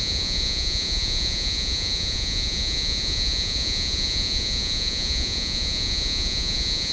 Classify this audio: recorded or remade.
remade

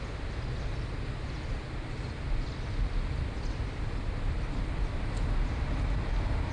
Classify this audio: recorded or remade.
recorded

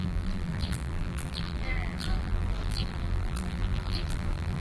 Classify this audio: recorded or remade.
remade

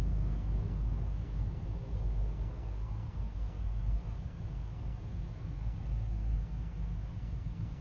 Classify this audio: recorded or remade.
remade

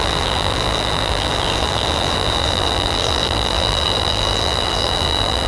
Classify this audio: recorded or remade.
remade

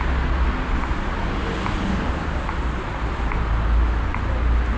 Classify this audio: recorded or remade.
recorded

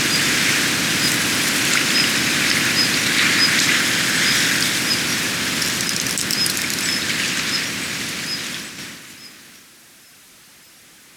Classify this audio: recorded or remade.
recorded